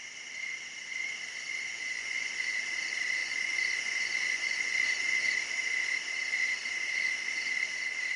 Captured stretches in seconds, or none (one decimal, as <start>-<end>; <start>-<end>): 0.0-1.7; 2.3-3.2; 5.2-8.2